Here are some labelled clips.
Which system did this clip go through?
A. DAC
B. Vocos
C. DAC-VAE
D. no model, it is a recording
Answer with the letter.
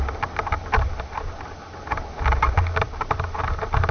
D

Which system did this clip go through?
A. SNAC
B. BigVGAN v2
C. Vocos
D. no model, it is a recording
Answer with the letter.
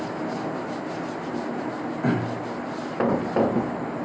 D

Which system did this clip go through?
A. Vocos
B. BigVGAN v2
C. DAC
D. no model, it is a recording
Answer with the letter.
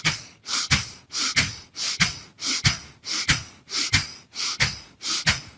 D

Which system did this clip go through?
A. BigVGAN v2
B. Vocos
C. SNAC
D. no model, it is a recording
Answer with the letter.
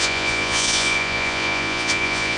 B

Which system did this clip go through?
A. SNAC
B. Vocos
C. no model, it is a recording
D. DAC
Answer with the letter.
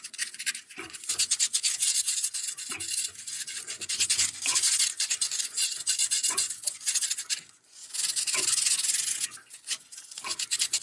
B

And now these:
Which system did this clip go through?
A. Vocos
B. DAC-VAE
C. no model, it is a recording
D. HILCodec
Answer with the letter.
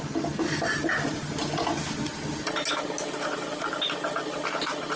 C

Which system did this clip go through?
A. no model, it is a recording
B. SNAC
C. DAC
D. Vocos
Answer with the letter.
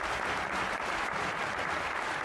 A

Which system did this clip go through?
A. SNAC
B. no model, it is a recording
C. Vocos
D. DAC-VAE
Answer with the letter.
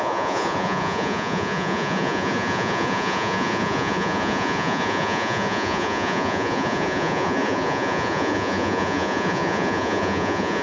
C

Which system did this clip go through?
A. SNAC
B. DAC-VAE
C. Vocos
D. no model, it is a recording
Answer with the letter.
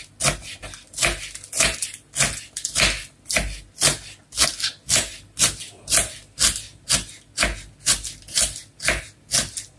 D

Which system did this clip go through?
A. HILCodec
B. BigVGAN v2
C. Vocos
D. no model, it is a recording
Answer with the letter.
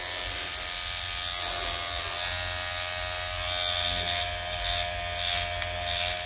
D